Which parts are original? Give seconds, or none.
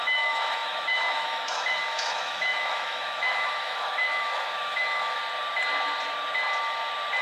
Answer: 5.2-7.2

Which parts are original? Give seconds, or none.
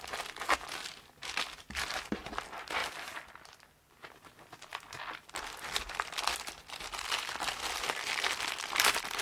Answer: 0.0-9.2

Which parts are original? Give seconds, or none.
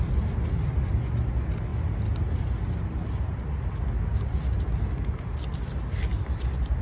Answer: 0.0-6.8